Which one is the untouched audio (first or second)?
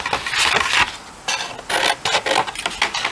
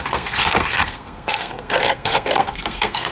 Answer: first